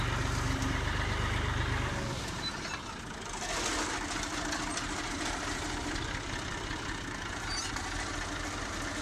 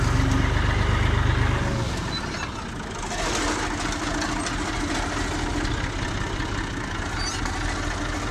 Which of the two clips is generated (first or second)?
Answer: first